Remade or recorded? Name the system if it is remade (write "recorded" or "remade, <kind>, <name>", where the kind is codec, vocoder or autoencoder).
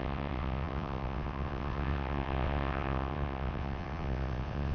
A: remade, vocoder, WaveNeXt